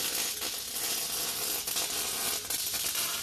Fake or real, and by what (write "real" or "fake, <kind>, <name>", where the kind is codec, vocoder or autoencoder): real